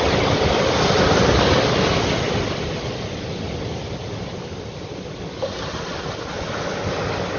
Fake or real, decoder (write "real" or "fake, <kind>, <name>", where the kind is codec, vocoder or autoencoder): real